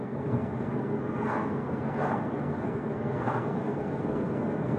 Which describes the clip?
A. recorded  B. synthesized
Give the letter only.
B